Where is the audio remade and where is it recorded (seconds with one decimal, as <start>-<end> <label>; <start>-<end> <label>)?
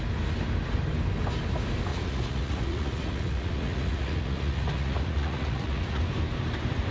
0.0-1.9 recorded; 1.9-6.0 remade; 6.0-6.9 recorded